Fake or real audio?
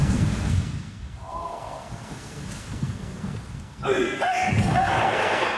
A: fake